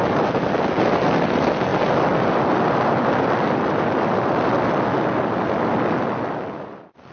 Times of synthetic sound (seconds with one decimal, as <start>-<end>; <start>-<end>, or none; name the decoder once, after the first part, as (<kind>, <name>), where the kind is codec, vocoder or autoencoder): none